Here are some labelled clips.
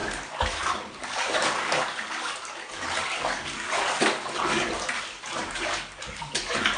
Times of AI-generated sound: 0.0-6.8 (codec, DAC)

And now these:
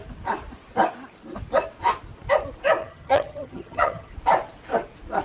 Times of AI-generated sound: 2.8-4.1 (vocoder, HiFi-GAN)